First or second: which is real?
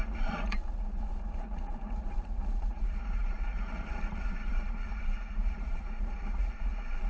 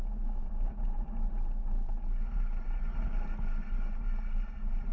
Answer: second